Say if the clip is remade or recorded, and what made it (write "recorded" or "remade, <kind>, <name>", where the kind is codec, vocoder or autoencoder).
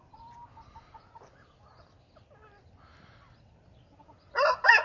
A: recorded